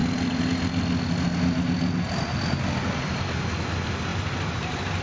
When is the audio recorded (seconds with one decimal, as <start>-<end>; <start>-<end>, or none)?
0.0-5.0